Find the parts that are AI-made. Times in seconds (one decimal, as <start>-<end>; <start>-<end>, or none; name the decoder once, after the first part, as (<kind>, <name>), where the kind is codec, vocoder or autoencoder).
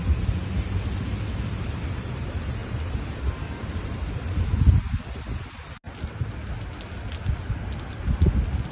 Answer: 2.6-4.3 (vocoder, BigVGAN v2)